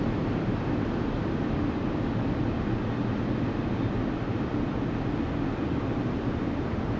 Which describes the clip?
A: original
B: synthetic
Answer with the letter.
A